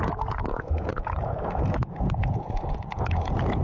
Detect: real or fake fake